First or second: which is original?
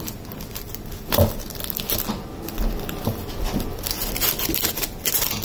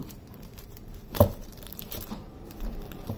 first